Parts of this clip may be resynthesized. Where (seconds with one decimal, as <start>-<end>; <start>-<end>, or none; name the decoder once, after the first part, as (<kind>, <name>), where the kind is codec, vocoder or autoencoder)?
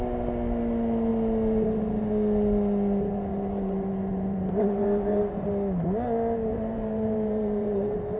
3.3-5.5 (vocoder, BigVGAN v2); 6.5-8.2